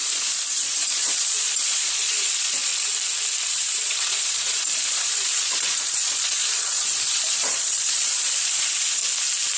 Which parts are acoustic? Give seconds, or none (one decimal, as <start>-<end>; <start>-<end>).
2.7-3.5; 9.0-9.6